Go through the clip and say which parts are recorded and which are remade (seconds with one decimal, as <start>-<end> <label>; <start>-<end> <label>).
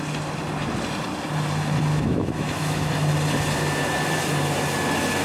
0.0-1.9 recorded; 1.9-2.9 remade; 2.9-5.2 recorded